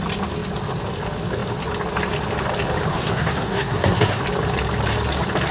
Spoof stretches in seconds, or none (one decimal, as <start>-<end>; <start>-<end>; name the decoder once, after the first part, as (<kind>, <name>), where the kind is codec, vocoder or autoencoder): 2.9-4.2 (codec, SNAC)